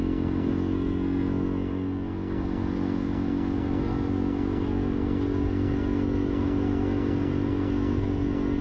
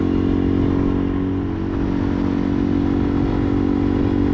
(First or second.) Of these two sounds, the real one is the second